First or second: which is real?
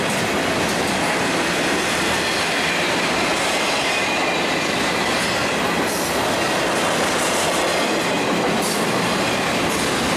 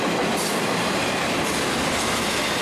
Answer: first